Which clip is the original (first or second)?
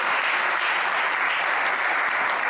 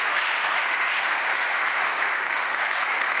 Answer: first